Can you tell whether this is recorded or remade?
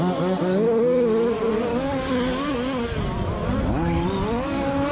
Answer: recorded